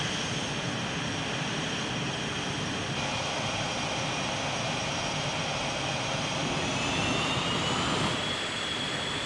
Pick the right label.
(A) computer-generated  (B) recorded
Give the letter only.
B